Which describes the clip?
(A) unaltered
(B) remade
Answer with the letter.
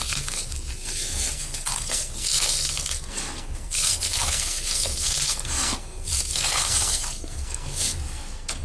B